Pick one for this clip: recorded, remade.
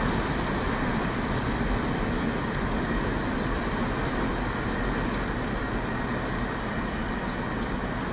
recorded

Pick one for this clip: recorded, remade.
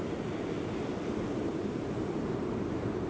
recorded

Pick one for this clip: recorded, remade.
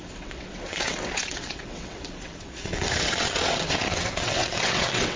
remade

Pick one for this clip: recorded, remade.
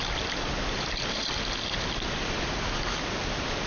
recorded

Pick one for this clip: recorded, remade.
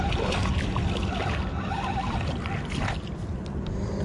recorded